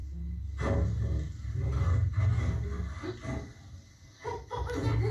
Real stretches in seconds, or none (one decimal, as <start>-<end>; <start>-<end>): 0.0-5.1